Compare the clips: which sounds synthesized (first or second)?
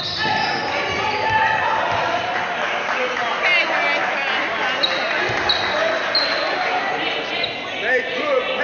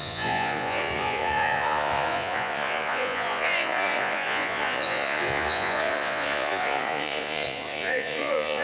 second